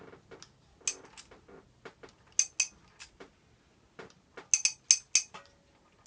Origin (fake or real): real